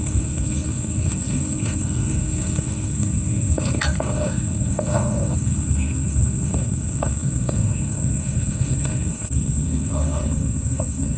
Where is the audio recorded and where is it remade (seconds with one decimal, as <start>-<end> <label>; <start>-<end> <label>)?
0.0-11.2 remade